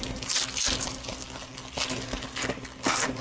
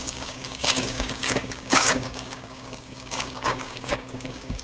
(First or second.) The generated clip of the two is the second